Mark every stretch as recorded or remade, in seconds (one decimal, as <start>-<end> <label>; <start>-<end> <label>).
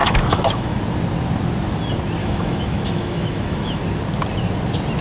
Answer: 0.0-0.8 remade; 0.8-2.2 recorded; 2.2-3.8 remade; 3.8-5.0 recorded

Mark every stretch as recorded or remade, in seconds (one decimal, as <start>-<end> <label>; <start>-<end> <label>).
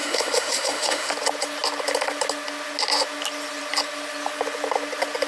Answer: 0.0-1.1 remade; 1.1-5.3 recorded